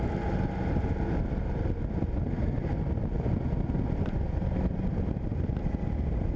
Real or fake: real